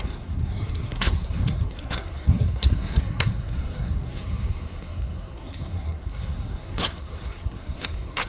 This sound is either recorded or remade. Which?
remade